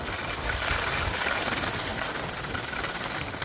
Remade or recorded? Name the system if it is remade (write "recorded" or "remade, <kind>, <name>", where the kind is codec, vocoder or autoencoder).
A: recorded